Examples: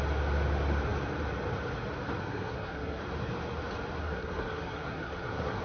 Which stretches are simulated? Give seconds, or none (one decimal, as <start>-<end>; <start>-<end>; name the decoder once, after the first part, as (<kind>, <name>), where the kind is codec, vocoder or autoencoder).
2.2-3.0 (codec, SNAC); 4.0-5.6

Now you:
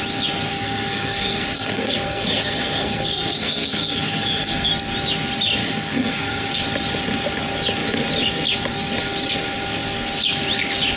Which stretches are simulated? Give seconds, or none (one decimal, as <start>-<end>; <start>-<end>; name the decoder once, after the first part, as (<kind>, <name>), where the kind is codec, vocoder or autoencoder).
0.5-4.7 (codec, SNAC); 5.6-6.6

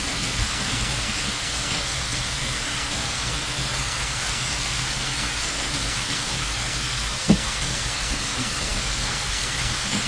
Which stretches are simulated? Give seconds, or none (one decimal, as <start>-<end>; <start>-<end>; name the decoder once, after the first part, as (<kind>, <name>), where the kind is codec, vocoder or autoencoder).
0.0-10.1 (codec, SNAC)

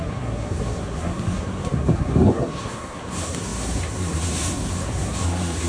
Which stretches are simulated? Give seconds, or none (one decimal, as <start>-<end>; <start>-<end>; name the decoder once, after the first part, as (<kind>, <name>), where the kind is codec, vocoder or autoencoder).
0.0-5.7 (codec, SNAC)